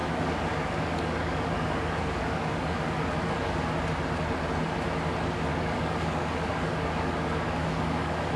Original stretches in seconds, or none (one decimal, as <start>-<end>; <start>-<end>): 3.6-5.5